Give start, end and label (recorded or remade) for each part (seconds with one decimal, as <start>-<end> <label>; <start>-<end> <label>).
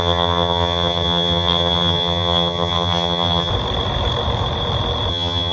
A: 0.0-3.5 remade; 3.5-5.1 recorded; 5.1-5.5 remade